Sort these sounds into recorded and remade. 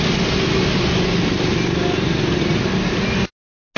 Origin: recorded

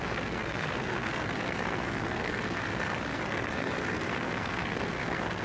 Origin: remade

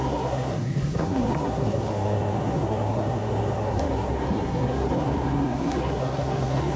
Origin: remade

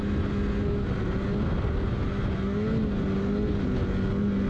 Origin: recorded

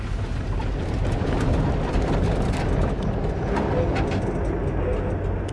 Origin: recorded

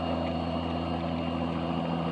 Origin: recorded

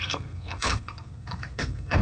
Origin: remade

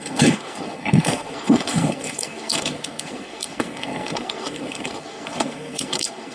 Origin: remade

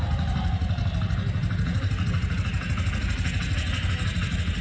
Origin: recorded